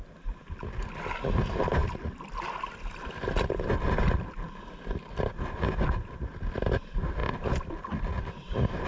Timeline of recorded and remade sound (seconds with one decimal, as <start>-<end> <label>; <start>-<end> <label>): 0.0-8.9 recorded